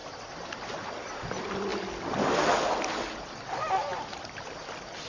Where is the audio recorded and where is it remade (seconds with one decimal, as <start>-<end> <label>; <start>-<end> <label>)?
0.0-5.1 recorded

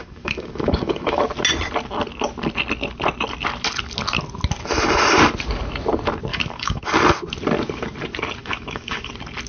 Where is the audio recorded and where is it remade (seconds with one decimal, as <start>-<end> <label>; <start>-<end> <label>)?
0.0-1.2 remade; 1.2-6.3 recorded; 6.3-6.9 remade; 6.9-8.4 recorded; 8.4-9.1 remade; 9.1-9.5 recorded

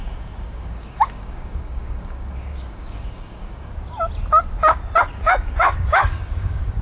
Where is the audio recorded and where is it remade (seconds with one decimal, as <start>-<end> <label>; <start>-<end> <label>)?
0.0-3.7 remade; 3.7-5.1 recorded; 5.1-6.8 remade

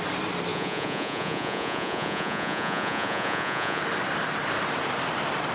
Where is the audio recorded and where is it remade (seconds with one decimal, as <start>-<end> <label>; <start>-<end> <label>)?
0.0-0.5 recorded; 0.5-3.8 remade; 3.8-5.5 recorded

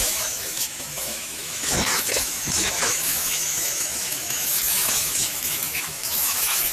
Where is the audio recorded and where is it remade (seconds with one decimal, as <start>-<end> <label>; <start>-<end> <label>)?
0.0-6.7 remade

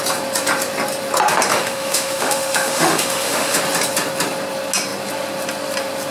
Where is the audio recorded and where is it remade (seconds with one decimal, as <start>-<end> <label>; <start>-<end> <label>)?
0.0-1.5 recorded; 1.5-3.6 remade; 3.6-6.1 recorded